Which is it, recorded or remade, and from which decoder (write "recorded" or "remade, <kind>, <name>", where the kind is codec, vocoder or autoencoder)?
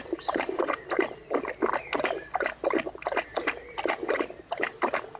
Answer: recorded